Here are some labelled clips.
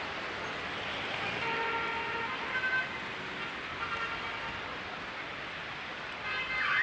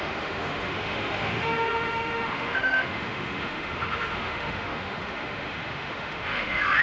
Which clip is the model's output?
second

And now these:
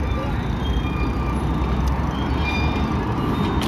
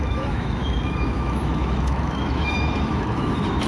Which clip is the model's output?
second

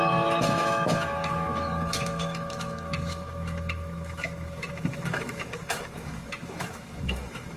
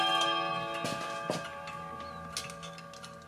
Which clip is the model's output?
first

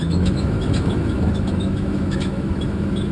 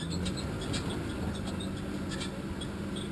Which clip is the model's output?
first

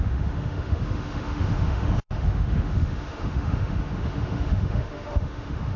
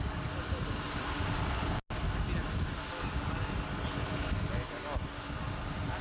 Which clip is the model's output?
first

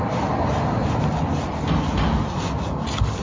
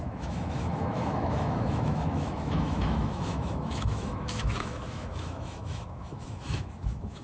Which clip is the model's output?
second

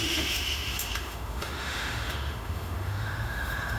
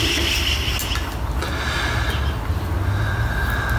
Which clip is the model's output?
first